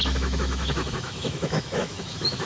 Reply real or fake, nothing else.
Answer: fake